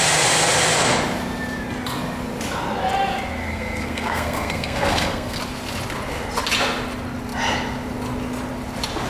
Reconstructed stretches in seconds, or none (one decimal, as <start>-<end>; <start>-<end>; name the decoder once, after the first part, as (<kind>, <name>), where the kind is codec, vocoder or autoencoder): 3.4-5.4 (codec, SNAC)